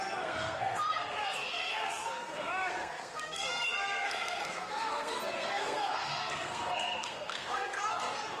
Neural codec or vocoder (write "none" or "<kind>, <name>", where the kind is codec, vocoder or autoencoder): codec, SNAC